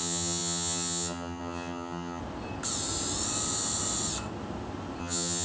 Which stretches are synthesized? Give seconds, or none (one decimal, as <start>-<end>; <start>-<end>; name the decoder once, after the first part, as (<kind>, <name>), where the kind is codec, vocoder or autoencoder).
0.0-2.2 (vocoder, HiFi-GAN); 5.0-5.4